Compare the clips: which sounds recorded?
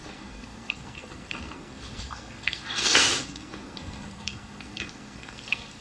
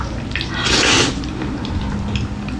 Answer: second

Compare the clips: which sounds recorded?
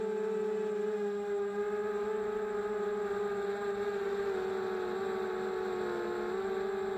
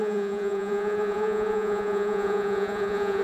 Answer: first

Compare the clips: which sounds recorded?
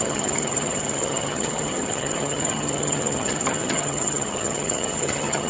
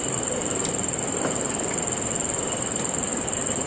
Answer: second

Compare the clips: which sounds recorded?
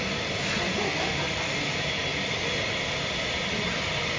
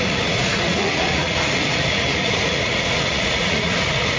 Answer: first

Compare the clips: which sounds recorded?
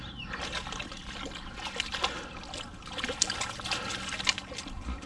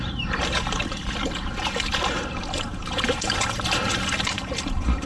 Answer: first